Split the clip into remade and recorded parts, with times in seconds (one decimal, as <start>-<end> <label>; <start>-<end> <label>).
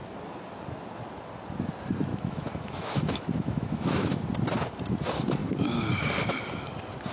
0.0-2.1 recorded; 2.1-4.2 remade; 4.2-7.1 recorded